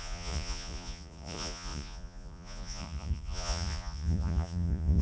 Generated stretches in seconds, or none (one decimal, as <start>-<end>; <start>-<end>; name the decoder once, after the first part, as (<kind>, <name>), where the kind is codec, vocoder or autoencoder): 0.0-5.0 (vocoder, Vocos)

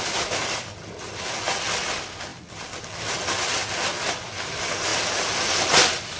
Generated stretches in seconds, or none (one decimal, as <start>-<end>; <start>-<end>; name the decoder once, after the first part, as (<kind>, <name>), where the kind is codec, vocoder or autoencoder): none

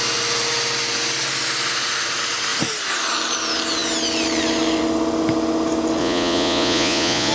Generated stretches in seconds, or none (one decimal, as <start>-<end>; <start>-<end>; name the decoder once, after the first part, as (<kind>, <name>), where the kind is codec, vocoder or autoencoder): 6.0-7.3 (vocoder, Vocos)